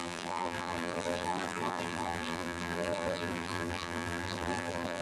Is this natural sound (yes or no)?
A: no